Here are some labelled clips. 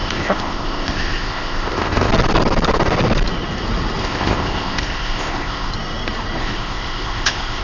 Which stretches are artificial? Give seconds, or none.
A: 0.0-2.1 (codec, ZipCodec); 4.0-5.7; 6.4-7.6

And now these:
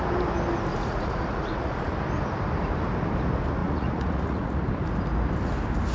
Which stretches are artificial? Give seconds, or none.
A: 0.7-1.9 (vocoder, Vocos); 3.6-4.6

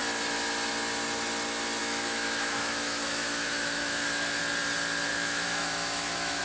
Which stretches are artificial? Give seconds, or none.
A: 1.8-4.4 (autoencoder, DAC-VAE); 5.1-6.4

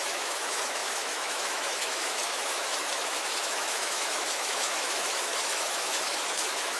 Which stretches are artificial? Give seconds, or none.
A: 0.0-6.8 (autoencoder, DAC-VAE)